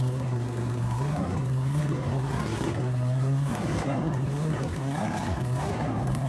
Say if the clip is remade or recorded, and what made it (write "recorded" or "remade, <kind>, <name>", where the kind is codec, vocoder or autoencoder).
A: remade, codec, SNAC